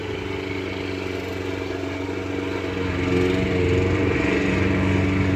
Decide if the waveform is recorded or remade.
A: recorded